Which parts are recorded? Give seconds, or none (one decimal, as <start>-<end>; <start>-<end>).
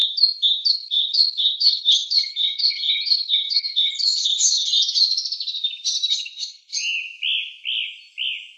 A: 0.0-0.7; 4.7-6.1; 6.7-8.6